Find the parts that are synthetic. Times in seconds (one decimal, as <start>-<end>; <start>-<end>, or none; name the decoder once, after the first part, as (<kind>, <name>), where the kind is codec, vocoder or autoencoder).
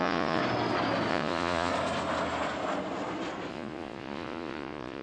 0.0-0.4 (vocoder, Vocos); 1.1-1.7; 3.5-5.0